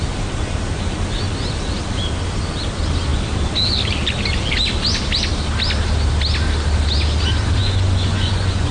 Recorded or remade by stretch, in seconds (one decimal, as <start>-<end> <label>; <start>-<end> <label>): 0.0-7.6 recorded; 7.6-8.7 remade